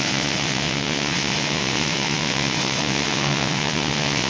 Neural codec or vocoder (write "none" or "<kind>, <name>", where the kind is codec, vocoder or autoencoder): vocoder, WaveNeXt